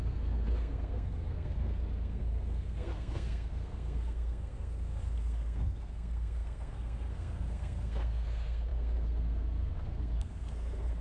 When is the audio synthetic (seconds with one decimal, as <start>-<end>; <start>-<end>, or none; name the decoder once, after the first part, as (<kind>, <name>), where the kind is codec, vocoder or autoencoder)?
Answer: 0.0-11.0 (codec, SNAC)